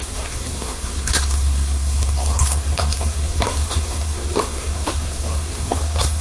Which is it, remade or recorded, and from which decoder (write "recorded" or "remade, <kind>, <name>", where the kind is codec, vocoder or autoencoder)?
remade, codec, SNAC